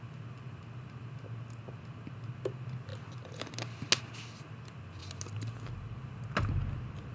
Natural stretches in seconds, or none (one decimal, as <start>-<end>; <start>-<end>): 0.0-7.1